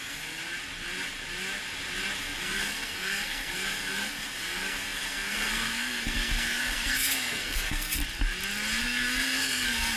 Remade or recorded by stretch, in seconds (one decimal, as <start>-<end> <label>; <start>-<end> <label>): 0.0-0.4 remade; 0.4-2.2 recorded; 2.2-8.0 remade; 8.0-8.8 recorded; 8.8-10.0 remade